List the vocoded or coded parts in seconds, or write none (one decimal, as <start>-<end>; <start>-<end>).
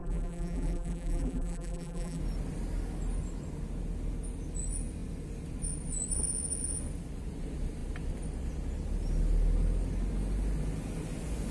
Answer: 0.0-2.2